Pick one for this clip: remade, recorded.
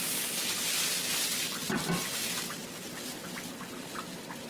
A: recorded